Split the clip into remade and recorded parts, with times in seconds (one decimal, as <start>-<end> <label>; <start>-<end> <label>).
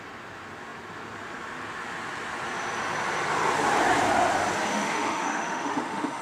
0.0-4.7 recorded; 4.7-6.2 remade